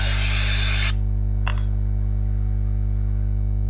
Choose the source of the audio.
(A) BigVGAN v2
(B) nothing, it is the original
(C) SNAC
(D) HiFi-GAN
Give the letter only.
B